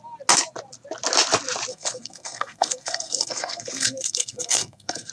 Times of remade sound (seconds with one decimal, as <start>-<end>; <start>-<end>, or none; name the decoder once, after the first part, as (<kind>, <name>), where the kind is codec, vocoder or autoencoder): 1.7-5.1 (codec, SNAC)